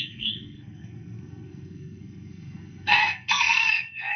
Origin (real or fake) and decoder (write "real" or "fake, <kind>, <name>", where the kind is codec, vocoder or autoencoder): fake, codec, SNAC